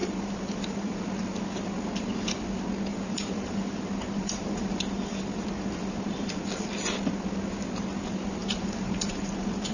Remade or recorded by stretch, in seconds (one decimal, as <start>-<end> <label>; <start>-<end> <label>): 0.0-1.0 remade; 1.0-2.9 recorded; 2.9-6.4 remade; 6.4-8.4 recorded; 8.4-9.7 remade